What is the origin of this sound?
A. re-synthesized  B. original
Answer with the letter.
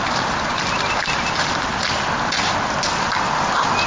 B